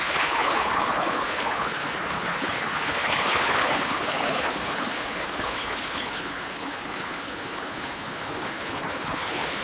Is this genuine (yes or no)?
no